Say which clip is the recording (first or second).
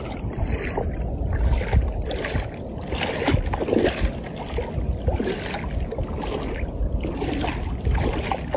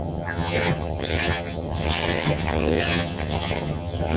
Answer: first